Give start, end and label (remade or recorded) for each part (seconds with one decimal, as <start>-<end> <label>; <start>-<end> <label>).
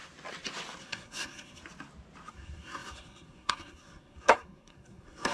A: 0.0-0.8 recorded; 0.8-1.6 remade; 1.6-2.3 recorded; 2.3-5.3 remade